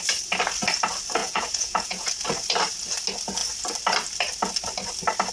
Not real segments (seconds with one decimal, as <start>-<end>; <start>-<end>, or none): 1.2-2.1

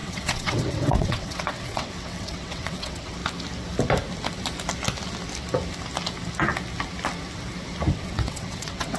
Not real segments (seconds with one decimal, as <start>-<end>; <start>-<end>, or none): 0.0-3.2; 7.9-9.0

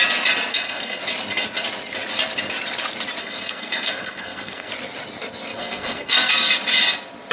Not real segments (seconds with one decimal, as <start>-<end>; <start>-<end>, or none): 0.5-1.0; 3.2-4.7; 5.5-6.3